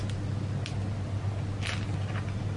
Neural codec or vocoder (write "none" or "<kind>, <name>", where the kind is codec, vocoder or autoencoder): none